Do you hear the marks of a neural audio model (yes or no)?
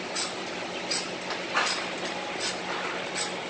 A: no